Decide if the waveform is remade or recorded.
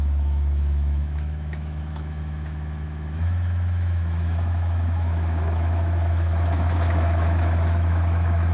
remade